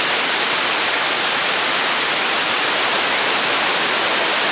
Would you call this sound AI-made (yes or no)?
no